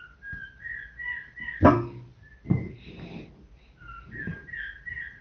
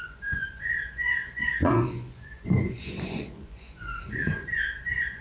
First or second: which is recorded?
first